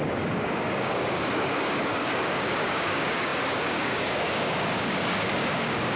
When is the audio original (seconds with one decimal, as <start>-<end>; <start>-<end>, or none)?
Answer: none